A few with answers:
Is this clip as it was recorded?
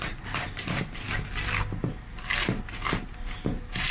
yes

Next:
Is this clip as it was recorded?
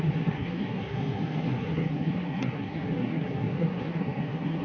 no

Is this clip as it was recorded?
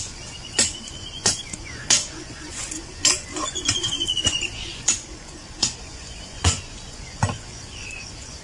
no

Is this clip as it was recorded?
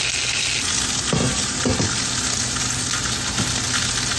yes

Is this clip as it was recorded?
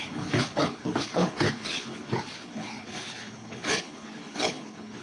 no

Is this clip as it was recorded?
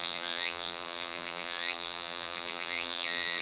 no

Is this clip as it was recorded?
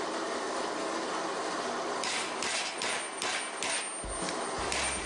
yes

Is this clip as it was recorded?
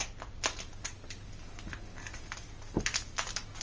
yes